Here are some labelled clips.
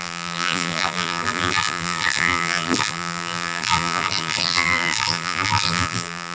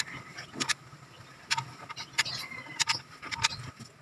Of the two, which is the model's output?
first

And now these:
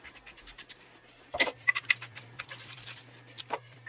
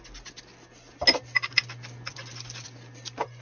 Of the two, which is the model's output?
first